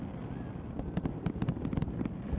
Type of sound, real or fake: real